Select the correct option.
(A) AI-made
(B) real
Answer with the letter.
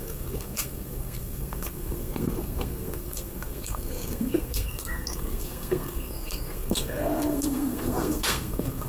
A